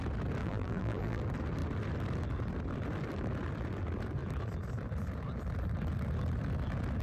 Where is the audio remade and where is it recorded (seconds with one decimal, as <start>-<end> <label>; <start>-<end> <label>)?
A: 0.0-0.4 recorded; 0.4-1.2 remade; 1.2-7.0 recorded